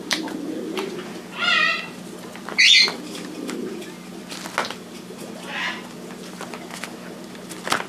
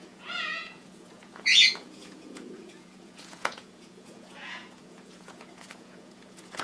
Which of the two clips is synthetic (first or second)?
second